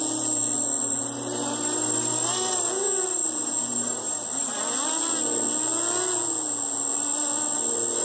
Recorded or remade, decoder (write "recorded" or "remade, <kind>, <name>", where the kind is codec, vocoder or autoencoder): recorded